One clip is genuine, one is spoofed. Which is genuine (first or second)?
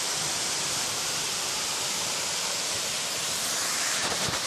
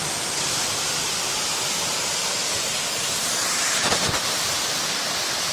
second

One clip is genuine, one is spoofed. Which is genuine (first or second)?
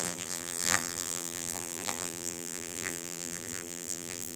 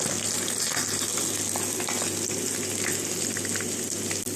second